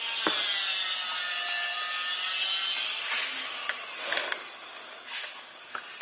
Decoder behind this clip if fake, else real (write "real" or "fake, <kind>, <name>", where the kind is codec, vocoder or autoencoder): real